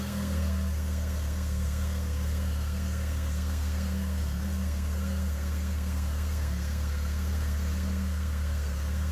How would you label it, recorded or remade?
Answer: remade